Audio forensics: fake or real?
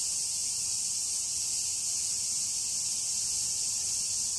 real